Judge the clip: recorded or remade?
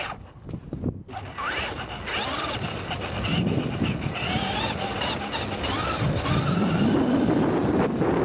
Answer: recorded